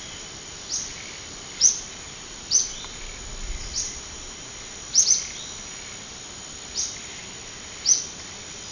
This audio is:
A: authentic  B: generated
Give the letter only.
A